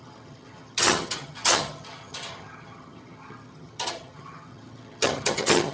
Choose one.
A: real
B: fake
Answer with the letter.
B